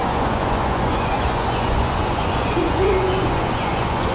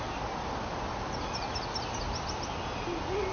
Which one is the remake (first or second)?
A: first